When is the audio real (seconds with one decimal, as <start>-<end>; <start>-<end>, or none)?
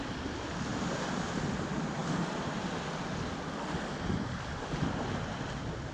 2.0-3.3